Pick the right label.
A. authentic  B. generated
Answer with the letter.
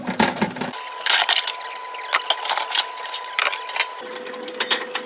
A